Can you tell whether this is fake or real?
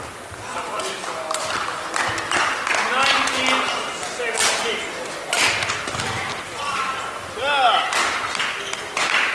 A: real